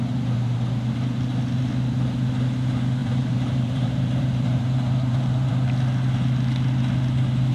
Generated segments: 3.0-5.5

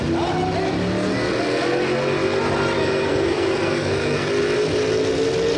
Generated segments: 2.8-4.3

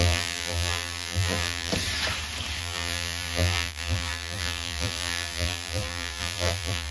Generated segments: 0.0-1.7; 2.6-6.9

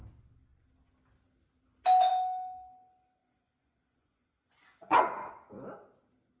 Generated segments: 3.2-5.3

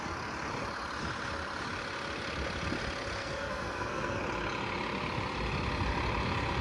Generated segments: 3.2-4.2

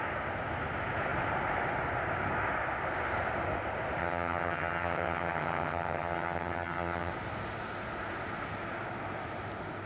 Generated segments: 4.0-7.1

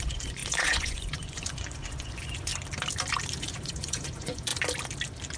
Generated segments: 0.0-2.5; 3.4-4.5